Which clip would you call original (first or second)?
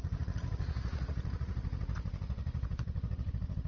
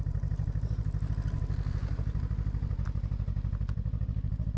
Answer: second